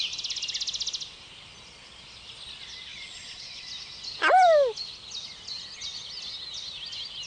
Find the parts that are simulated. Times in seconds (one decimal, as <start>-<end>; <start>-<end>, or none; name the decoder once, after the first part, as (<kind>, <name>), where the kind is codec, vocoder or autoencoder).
2.9-3.7 (vocoder, Vocos)